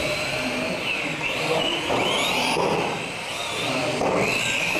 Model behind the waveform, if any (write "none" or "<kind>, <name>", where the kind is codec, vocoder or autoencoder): none